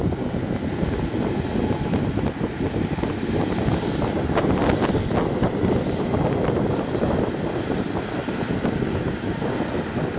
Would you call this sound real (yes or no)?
yes